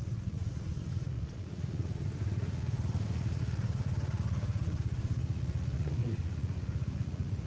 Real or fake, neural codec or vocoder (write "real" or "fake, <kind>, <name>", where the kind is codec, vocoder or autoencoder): fake, vocoder, Vocos